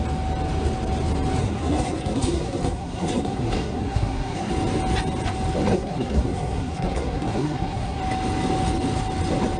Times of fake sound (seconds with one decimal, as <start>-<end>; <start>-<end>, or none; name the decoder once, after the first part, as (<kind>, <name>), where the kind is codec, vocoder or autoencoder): 1.4-4.5 (codec, SNAC); 5.7-8.0